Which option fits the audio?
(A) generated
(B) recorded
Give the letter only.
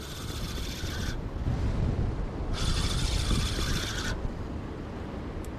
B